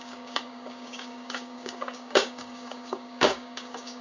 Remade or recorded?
remade